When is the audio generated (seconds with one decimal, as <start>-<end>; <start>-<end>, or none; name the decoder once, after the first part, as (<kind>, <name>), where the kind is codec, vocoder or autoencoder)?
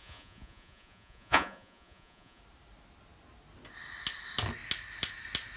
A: 0.0-2.4 (vocoder, Vocos)